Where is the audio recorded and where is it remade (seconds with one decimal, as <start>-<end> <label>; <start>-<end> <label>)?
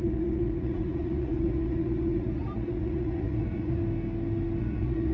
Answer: 0.0-3.8 remade; 3.8-4.6 recorded; 4.6-5.1 remade